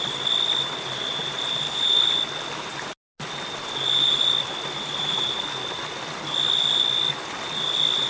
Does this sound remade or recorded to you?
recorded